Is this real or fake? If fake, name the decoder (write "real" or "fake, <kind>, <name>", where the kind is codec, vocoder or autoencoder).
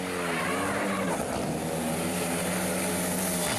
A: real